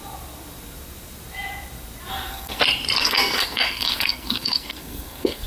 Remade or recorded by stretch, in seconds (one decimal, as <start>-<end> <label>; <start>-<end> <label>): 0.0-2.1 recorded; 2.1-2.6 remade; 2.6-3.0 recorded; 3.0-5.5 remade